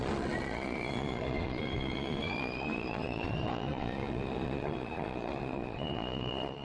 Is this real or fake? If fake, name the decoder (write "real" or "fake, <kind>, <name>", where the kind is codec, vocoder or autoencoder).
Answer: fake, vocoder, Vocos